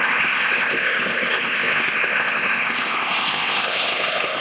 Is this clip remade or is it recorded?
remade